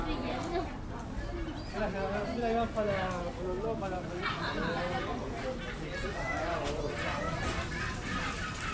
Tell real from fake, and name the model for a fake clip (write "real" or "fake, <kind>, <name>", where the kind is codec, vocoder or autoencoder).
real